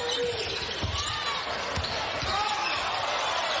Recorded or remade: recorded